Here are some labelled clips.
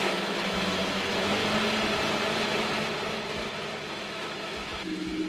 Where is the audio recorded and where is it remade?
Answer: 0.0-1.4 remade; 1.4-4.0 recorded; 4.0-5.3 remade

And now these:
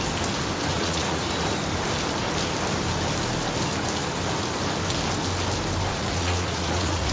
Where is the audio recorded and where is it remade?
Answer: 0.0-0.7 recorded; 0.7-1.3 remade; 1.3-5.9 recorded; 5.9-7.1 remade

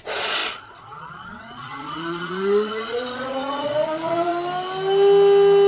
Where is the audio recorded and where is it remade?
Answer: 0.0-4.3 remade; 4.3-5.7 recorded

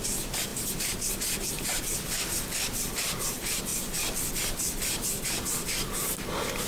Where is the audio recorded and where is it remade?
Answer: 0.0-6.7 recorded

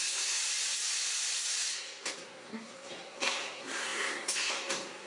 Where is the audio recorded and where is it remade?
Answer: 0.0-0.4 remade; 0.4-1.7 recorded; 1.7-5.1 remade

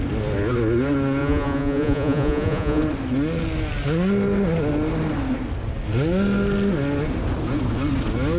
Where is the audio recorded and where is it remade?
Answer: 0.0-1.2 recorded; 1.2-2.8 remade; 2.8-8.4 recorded

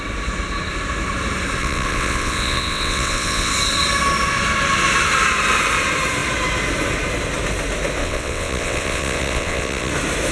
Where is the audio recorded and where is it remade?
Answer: 0.0-1.6 recorded; 1.6-3.5 remade; 3.5-8.0 recorded; 8.0-9.9 remade; 9.9-10.3 recorded

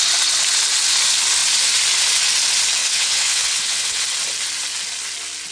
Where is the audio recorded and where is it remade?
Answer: 0.0-2.8 recorded; 2.8-4.0 remade; 4.0-5.5 recorded